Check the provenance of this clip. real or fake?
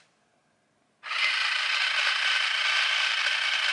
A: real